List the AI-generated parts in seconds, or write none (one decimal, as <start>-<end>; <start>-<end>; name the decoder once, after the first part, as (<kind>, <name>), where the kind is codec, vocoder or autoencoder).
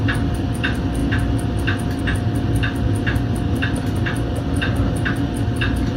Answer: none